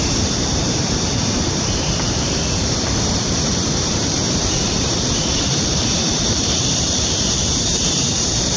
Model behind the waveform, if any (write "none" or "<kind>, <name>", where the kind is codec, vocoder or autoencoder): vocoder, BigVGAN v2